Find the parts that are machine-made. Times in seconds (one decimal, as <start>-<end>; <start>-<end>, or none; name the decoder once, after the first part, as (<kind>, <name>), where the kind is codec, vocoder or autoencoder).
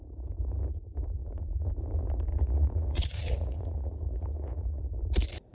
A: 1.2-1.7 (vocoder, Vocos); 2.3-4.8